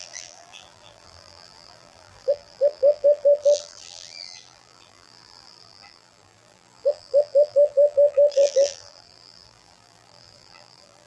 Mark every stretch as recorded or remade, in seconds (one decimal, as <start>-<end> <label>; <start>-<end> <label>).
0.0-11.1 remade